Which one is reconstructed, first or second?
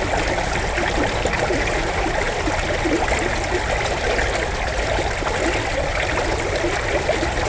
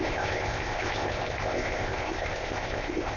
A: second